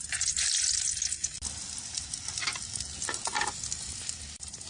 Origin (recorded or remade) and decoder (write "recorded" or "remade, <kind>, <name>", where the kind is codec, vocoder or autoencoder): recorded